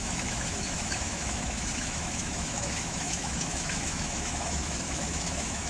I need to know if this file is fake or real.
fake